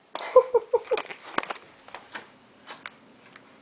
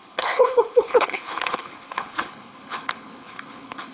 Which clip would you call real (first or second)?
first